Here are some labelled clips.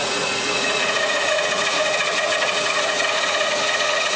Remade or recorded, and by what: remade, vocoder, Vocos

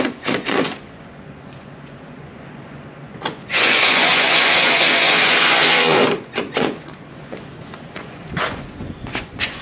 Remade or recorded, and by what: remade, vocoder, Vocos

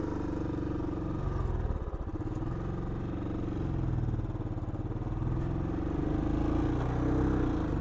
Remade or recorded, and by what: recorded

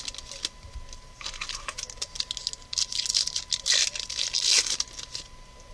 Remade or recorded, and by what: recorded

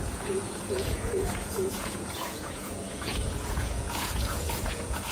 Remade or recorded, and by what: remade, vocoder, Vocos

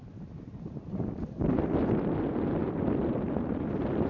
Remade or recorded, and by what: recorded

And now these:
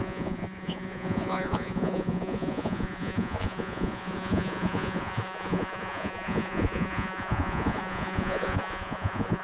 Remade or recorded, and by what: remade, vocoder, Vocos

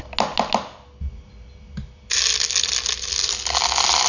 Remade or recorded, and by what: recorded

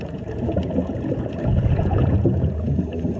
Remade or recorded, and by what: remade, vocoder, Vocos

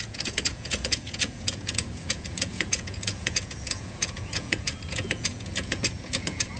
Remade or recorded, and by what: remade, vocoder, Vocos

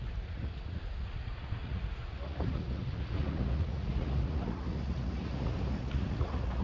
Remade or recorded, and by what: remade, vocoder, Vocos